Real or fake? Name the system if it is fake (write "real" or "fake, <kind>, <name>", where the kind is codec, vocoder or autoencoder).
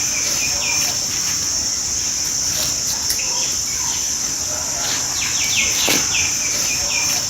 real